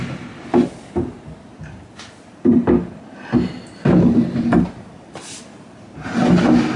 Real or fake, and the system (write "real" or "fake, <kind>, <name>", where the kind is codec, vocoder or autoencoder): real